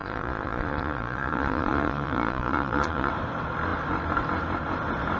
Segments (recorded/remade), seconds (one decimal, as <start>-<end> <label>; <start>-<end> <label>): 0.0-3.1 remade; 3.1-5.2 recorded